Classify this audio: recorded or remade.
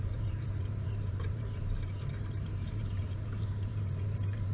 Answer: remade